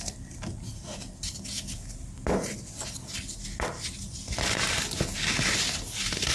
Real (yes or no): yes